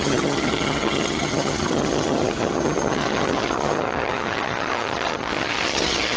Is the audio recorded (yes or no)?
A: no